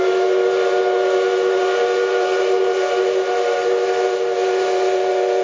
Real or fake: real